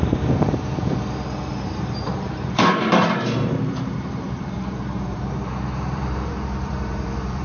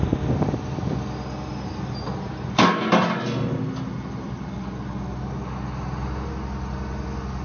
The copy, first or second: first